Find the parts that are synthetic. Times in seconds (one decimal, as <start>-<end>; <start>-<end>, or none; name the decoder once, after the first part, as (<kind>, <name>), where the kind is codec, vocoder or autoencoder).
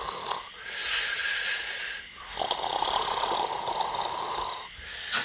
none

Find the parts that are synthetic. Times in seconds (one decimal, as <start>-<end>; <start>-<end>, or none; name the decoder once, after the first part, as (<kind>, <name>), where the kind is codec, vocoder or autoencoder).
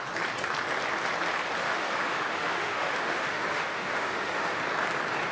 1.6-4.6 (autoencoder, DAC-VAE)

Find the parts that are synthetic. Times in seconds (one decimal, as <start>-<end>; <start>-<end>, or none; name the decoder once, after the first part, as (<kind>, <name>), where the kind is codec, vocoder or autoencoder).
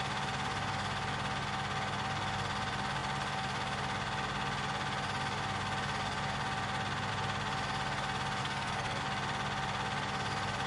8.4-9.0 (codec, SNAC)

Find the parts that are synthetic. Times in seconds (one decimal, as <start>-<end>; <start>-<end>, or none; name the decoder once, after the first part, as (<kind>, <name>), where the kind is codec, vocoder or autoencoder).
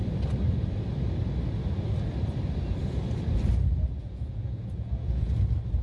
4.0-5.3 (vocoder, Vocos)